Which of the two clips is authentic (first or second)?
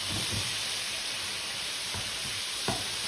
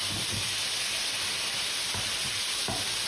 second